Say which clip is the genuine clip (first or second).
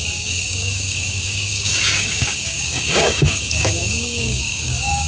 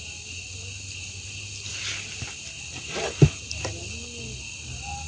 second